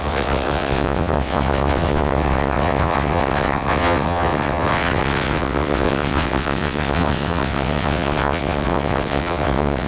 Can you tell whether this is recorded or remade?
remade